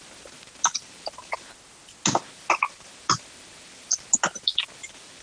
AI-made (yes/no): no